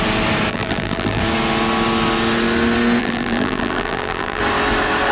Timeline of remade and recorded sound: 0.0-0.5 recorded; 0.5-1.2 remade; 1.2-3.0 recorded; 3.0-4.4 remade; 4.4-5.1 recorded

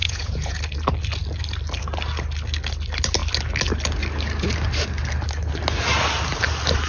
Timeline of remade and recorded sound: 0.0-0.6 remade; 0.6-6.9 recorded

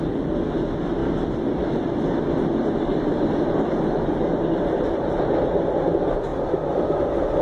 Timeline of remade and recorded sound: 0.0-1.0 recorded; 1.0-5.1 remade; 5.1-6.3 recorded; 6.3-7.4 remade

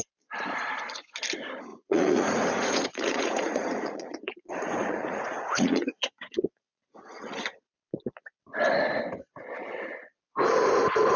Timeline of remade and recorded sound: 0.0-1.7 recorded; 1.7-6.8 remade; 6.8-11.2 recorded

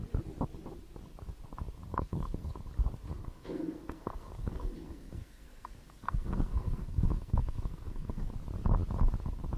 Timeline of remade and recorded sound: 0.0-1.9 recorded; 1.9-2.5 remade; 2.5-3.2 recorded; 3.2-8.3 remade; 8.3-9.6 recorded

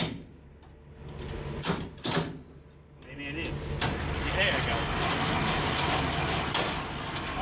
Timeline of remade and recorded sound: 0.0-7.4 recorded

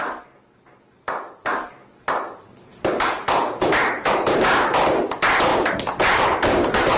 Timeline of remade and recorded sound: 0.0-2.7 recorded; 2.7-3.8 remade; 3.8-5.5 recorded; 5.5-7.0 remade